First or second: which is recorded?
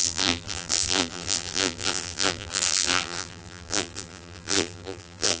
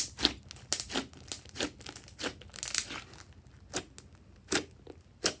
second